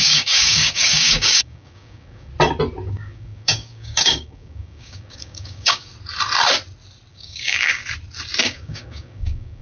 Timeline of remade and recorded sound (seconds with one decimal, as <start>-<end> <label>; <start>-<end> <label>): 0.0-2.3 remade; 2.3-2.9 recorded; 2.9-5.9 remade; 5.9-7.1 recorded; 7.1-7.8 remade; 7.8-8.4 recorded; 8.4-9.6 remade